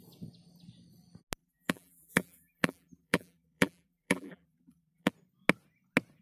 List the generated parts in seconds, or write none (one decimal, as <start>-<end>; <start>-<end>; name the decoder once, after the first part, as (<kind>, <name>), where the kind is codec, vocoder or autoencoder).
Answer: 1.4-5.1 (vocoder, BigVGAN v2)